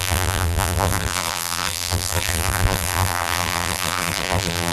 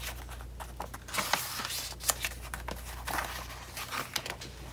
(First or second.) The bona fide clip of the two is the second